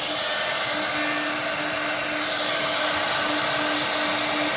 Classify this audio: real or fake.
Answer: real